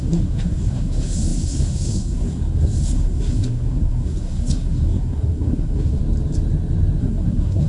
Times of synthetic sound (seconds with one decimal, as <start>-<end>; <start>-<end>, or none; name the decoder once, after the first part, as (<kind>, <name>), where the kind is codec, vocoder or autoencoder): 0.0-6.0 (codec, SNAC); 7.0-7.7